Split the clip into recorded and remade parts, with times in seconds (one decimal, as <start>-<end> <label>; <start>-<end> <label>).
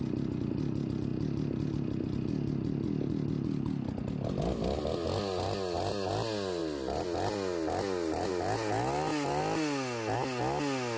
0.0-11.0 recorded